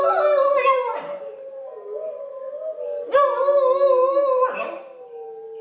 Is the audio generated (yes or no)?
no